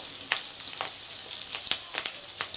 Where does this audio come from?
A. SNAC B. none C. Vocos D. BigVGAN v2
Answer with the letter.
B